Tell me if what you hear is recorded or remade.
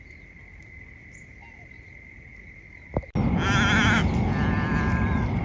recorded